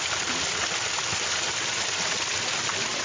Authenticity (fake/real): real